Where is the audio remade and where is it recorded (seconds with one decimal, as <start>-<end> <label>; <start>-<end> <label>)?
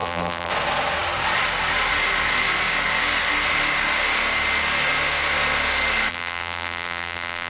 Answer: 0.0-0.5 remade; 0.5-6.1 recorded; 6.1-7.5 remade